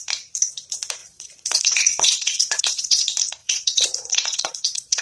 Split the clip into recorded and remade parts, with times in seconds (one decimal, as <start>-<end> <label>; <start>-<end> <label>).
0.0-1.0 recorded; 1.0-3.0 remade; 3.0-3.4 recorded; 3.4-5.0 remade